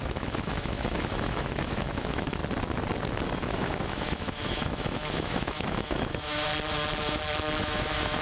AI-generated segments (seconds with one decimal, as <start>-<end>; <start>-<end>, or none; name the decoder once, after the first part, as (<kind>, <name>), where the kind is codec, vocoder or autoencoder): 0.0-2.4 (autoencoder, DAC-VAE); 3.4-6.5; 7.6-8.2